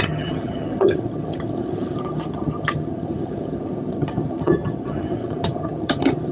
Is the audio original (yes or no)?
no